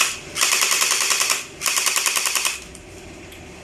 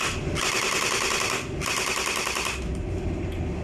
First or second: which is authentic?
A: second